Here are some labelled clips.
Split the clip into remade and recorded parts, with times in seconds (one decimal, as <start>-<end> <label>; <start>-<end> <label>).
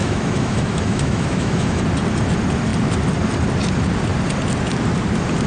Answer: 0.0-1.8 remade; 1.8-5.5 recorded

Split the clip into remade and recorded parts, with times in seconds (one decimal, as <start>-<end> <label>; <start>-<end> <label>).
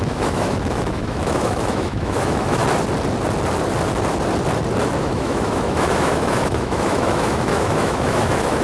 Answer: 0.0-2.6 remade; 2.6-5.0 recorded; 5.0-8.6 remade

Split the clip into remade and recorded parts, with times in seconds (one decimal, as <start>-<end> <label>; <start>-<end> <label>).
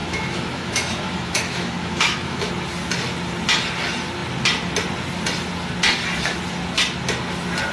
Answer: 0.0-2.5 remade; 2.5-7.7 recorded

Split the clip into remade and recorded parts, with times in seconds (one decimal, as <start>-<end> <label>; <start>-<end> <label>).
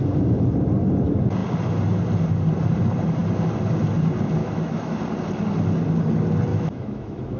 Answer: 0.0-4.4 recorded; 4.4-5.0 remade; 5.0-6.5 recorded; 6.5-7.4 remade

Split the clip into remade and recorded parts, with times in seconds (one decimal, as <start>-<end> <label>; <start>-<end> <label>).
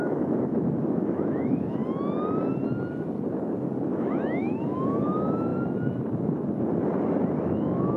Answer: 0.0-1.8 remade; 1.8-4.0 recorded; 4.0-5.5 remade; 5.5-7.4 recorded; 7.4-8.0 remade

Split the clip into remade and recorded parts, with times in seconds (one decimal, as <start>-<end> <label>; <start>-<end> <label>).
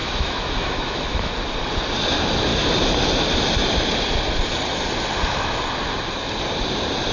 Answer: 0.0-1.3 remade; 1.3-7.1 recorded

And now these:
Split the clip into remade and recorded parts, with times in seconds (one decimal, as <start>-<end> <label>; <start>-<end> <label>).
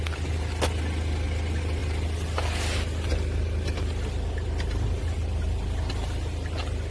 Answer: 0.0-6.9 recorded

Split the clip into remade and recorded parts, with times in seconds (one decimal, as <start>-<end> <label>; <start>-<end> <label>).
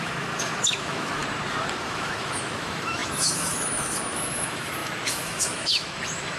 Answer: 0.0-1.2 remade; 1.2-1.8 recorded; 1.8-6.4 remade